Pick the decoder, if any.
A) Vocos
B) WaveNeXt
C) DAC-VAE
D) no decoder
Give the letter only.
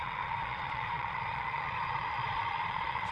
A